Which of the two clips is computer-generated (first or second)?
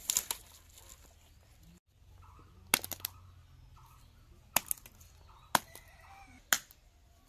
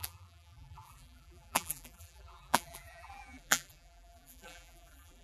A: second